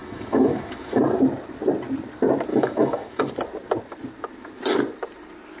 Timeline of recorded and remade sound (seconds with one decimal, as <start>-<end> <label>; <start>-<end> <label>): 0.0-1.0 remade; 1.0-2.5 recorded; 2.5-3.3 remade; 3.3-5.6 recorded